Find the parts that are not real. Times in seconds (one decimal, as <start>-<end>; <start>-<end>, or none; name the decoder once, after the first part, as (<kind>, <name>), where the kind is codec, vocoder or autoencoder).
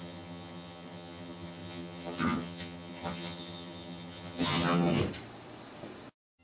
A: 0.0-5.0 (vocoder, HiFi-GAN)